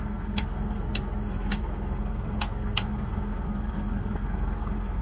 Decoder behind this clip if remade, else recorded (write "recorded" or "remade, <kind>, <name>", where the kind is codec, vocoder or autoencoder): remade, codec, SNAC